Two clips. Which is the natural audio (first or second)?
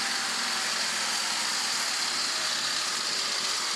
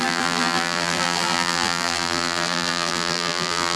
first